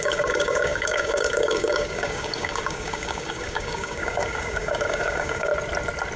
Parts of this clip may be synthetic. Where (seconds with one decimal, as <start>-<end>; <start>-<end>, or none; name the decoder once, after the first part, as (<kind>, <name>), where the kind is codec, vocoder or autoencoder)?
0.0-5.5 (codec, DAC)